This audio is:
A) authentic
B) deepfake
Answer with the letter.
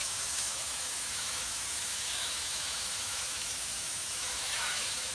B